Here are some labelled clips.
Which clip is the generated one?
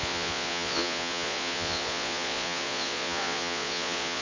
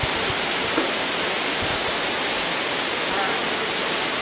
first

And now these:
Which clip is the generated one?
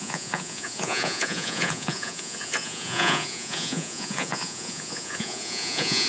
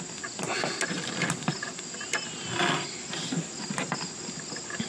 first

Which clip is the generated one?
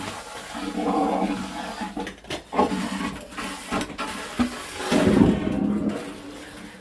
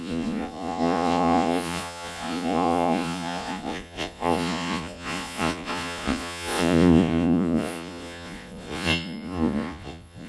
second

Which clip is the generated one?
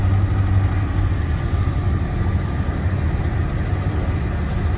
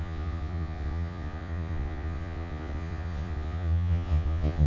second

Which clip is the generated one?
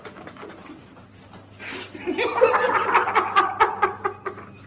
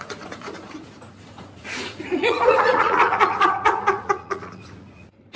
second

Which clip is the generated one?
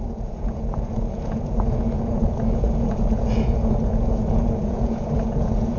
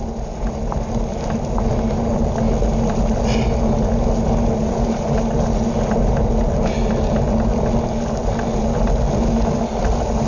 first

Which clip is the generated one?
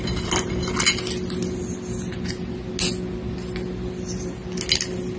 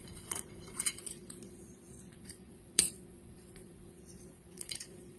second